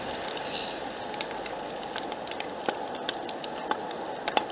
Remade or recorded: recorded